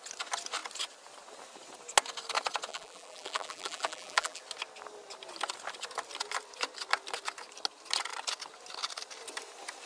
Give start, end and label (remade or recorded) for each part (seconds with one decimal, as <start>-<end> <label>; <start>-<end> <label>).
0.0-2.7 recorded; 2.7-4.4 remade; 4.4-9.9 recorded